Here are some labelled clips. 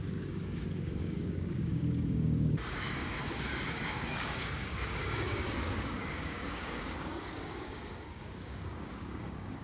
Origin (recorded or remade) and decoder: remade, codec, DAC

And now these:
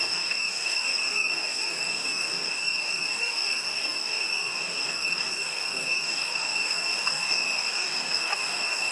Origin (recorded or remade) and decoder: remade, codec, DAC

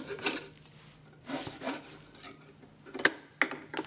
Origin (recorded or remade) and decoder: recorded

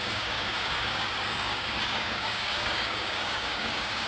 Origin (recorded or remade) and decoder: remade, codec, DAC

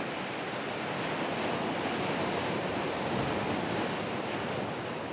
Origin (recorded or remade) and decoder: recorded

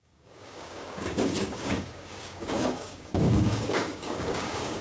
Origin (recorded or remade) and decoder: remade, codec, DAC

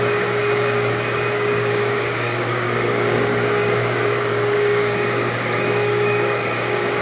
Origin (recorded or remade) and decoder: remade, codec, DAC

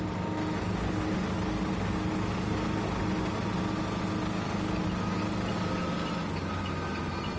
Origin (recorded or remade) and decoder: recorded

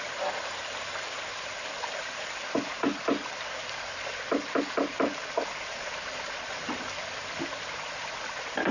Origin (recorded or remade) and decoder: recorded